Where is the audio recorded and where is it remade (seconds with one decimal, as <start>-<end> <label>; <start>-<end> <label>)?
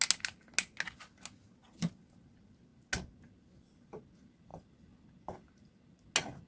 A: 0.0-6.5 recorded